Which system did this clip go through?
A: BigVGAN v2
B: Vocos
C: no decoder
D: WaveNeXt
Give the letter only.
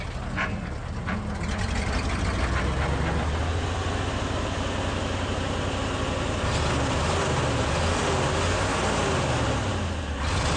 C